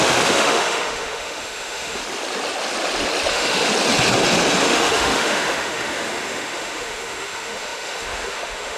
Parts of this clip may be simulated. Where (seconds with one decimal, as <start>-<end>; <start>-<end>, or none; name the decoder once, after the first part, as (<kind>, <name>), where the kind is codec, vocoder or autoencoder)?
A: 0.0-2.0 (autoencoder, DAC-VAE); 3.3-3.7; 4.6-8.8